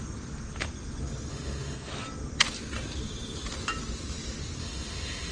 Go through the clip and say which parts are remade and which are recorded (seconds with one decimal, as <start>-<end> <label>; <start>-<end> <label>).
0.0-1.3 recorded; 1.3-1.9 remade; 1.9-4.6 recorded; 4.6-5.3 remade